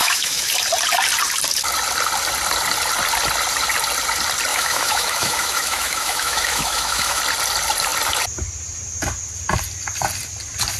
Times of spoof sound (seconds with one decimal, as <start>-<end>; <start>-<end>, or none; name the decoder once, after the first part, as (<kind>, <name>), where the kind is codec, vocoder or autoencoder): 0.0-0.5 (autoencoder, DAC-VAE); 4.5-7.2